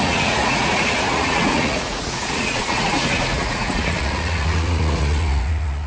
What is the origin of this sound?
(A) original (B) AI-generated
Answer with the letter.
B